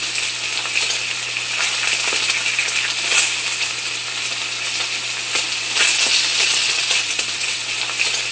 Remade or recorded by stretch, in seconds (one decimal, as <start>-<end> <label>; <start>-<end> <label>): 0.0-6.6 recorded; 6.6-7.8 remade; 7.8-8.3 recorded